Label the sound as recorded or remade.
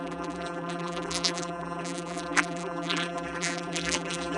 remade